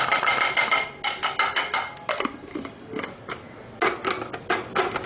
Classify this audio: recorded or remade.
recorded